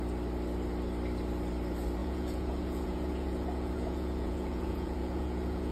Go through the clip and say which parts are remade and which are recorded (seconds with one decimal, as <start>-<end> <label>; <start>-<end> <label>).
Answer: 0.0-2.0 recorded; 2.0-5.7 remade